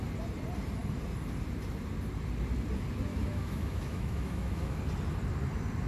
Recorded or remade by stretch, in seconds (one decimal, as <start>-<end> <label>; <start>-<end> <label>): 0.0-3.1 recorded; 3.1-4.8 remade; 4.8-5.9 recorded